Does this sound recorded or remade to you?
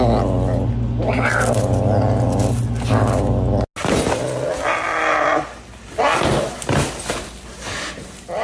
recorded